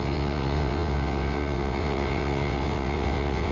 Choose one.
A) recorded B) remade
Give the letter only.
B